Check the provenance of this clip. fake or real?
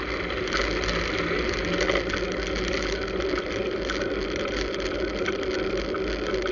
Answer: real